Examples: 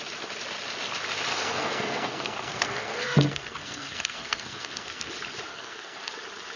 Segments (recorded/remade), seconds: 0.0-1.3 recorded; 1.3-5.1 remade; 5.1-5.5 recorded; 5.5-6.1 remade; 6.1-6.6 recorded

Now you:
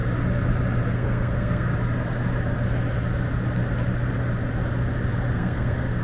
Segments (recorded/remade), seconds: 0.0-0.9 recorded; 0.9-1.7 remade; 1.7-5.3 recorded; 5.3-6.0 remade

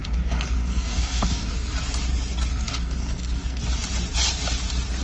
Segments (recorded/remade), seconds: 0.0-1.7 remade; 1.7-2.5 recorded; 2.5-3.6 remade; 3.6-5.0 recorded

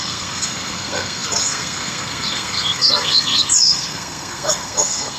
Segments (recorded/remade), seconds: 0.0-5.2 remade

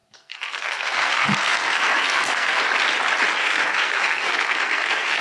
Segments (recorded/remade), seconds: 0.0-2.6 remade; 2.6-3.4 recorded; 3.4-5.2 remade

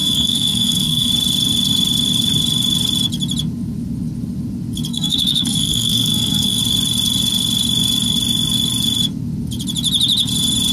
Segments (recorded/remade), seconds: 0.0-1.1 remade; 1.1-4.9 recorded; 4.9-6.6 remade; 6.6-10.7 recorded

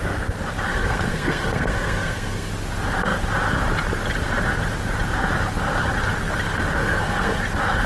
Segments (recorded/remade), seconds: 0.0-0.7 recorded; 0.7-2.5 remade; 2.5-6.8 recorded; 6.8-7.4 remade; 7.4-7.9 recorded

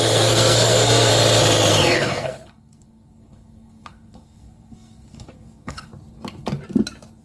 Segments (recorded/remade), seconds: 0.0-1.1 remade; 1.1-1.7 recorded; 1.7-5.9 remade; 5.9-7.2 recorded